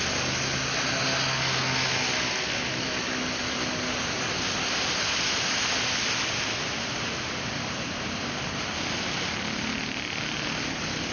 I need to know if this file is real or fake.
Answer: real